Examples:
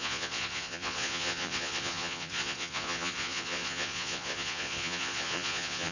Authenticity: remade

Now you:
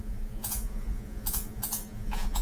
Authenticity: remade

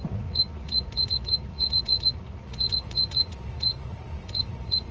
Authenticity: remade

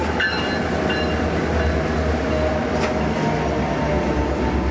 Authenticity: recorded